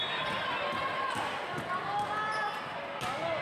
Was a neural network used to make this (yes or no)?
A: no